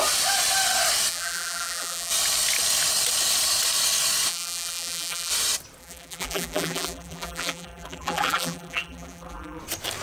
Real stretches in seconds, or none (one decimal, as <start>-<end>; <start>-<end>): 0.0-1.1; 2.1-4.3; 5.3-5.8; 9.6-10.0